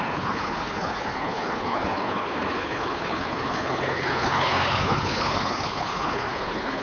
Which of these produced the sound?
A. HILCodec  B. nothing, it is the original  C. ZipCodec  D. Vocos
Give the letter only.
A